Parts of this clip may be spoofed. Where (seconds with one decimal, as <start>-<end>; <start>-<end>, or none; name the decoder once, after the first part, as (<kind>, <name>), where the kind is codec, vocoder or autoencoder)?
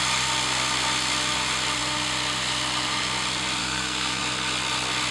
3.6-4.2 (codec, SNAC)